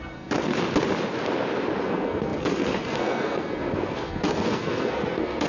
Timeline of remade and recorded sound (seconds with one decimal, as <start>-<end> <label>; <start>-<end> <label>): 0.0-0.5 remade; 0.5-1.8 recorded; 1.8-5.5 remade